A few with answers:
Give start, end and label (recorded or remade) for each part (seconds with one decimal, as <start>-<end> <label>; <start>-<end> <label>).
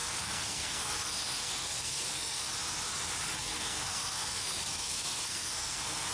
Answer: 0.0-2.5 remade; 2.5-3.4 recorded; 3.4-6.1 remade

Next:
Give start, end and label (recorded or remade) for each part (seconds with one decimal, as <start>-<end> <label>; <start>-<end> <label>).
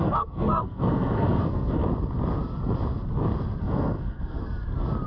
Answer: 0.0-1.8 remade; 1.8-3.6 recorded; 3.6-4.4 remade; 4.4-5.1 recorded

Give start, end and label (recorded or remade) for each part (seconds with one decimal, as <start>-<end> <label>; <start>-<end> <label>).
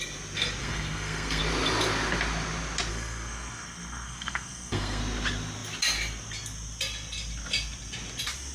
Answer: 0.0-0.6 recorded; 0.6-1.4 remade; 1.4-2.9 recorded; 2.9-5.0 remade; 5.0-8.5 recorded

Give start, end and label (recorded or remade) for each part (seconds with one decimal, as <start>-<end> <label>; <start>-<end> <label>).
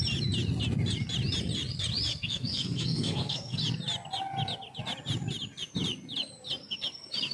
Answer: 0.0-2.1 recorded; 2.1-3.6 remade; 3.6-7.3 recorded